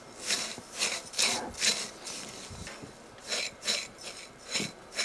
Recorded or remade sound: recorded